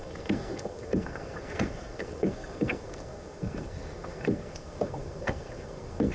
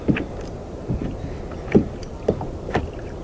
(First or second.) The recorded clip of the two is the second